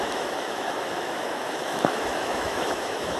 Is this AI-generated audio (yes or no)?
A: yes